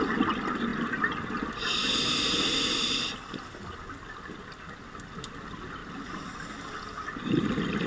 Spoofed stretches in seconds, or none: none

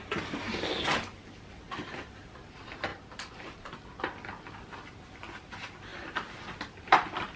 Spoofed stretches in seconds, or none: none

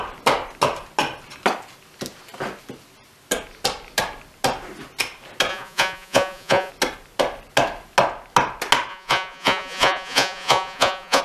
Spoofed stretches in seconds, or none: 5.5-6.7; 8.9-11.2

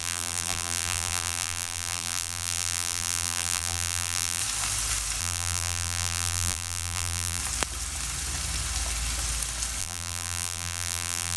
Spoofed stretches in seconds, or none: 0.0-4.4; 5.2-7.4; 9.8-11.4

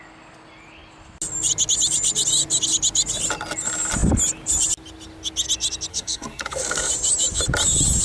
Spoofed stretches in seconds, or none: 5.9-6.9